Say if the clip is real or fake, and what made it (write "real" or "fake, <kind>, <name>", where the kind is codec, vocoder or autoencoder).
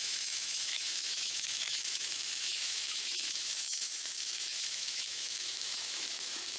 fake, autoencoder, DAC-VAE